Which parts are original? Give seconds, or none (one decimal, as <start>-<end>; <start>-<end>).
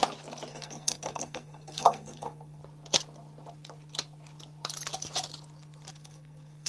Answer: 0.0-0.5; 2.6-5.9